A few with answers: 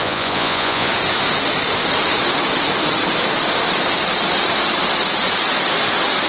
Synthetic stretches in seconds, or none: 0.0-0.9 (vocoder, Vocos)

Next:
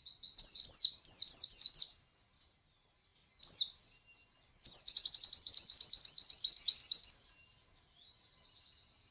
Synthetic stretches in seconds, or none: none

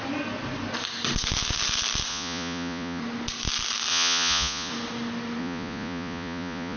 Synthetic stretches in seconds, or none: 2.1-3.0 (vocoder, Vocos); 3.9-4.7; 5.4-6.8

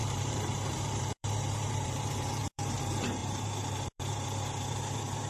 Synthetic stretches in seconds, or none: 0.0-2.8 (vocoder, BigVGAN v2); 3.2-5.3

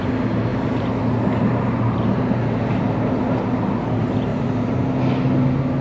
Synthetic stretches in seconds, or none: 0.5-1.0 (vocoder, BigVGAN v2); 1.5-2.4; 4.3-4.9

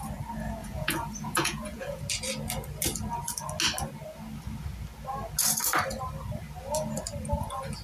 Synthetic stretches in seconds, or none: 0.6-2.0 (vocoder, Vocos)